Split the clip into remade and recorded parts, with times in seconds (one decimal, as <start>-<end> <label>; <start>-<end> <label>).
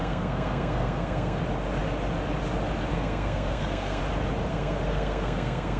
0.0-1.4 remade; 1.4-2.9 recorded; 2.9-4.0 remade; 4.0-4.5 recorded; 4.5-5.8 remade